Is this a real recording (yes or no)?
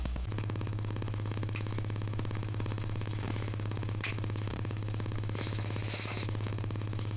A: no